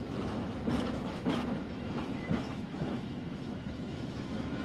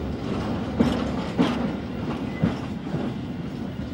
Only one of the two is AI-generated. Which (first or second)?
first